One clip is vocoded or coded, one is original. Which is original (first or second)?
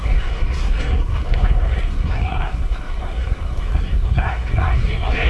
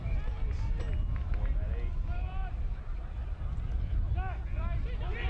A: second